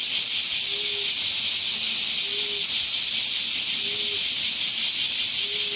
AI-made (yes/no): no